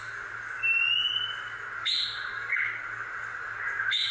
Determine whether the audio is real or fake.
real